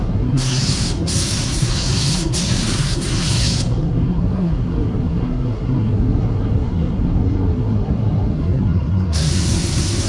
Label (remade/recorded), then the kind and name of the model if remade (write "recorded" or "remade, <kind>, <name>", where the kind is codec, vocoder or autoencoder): remade, codec, SNAC